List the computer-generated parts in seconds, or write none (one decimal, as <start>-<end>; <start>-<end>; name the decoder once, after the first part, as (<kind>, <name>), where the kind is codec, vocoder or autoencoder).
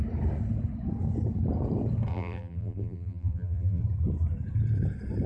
2.1-3.8 (vocoder, BigVGAN v2)